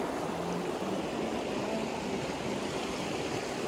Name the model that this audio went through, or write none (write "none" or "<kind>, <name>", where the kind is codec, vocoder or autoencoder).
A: none